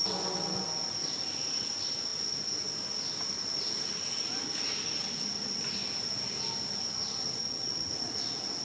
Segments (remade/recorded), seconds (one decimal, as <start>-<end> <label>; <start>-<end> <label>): 0.0-7.4 recorded; 7.4-7.9 remade; 7.9-8.6 recorded